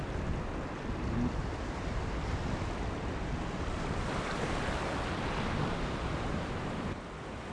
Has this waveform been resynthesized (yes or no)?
no